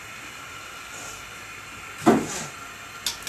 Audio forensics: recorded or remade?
recorded